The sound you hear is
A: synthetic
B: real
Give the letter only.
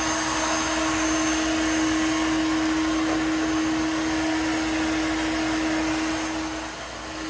B